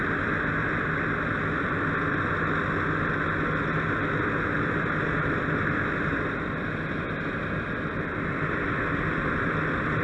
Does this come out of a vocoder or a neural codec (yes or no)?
no